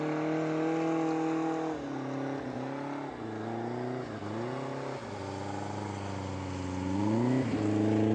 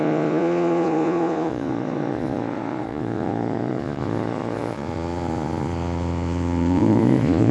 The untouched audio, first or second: first